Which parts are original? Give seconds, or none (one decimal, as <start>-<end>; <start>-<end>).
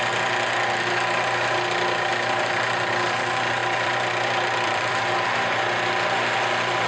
0.0-2.1; 2.9-3.6; 4.9-6.9